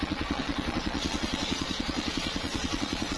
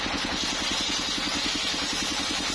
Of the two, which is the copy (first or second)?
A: first